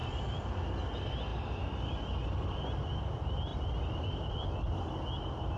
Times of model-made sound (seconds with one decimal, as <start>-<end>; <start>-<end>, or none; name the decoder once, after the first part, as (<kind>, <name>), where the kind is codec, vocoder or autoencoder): none